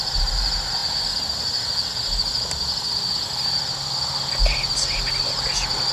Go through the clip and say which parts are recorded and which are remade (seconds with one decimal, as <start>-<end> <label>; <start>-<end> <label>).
0.0-5.9 recorded